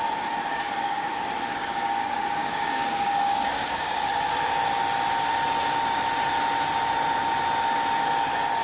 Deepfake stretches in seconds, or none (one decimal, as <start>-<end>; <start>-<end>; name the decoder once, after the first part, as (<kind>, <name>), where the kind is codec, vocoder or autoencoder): 0.5-1.1 (codec, DAC); 1.5-4.1